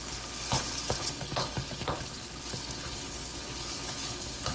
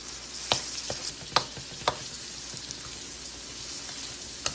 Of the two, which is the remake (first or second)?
first